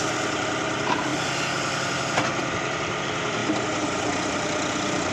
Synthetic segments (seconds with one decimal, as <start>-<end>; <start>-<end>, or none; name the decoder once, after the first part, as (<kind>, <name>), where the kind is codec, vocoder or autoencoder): 0.0-1.1 (vocoder, BigVGAN v2); 3.0-3.4; 4.0-5.1